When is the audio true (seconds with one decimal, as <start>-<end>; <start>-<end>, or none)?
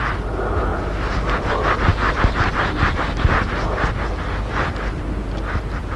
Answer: 0.0-6.0